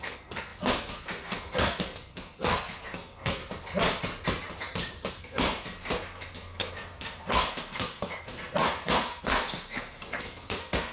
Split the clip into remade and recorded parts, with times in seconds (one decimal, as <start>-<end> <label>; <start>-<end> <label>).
0.0-3.4 remade; 3.4-5.1 recorded; 5.1-10.9 remade